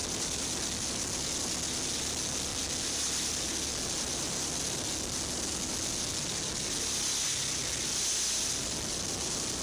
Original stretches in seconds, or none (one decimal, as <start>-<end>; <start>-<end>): 0.0-9.6